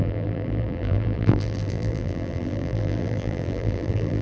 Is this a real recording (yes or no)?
no